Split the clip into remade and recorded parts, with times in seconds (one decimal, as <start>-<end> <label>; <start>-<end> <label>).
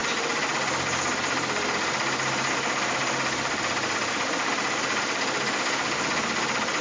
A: 0.0-6.8 recorded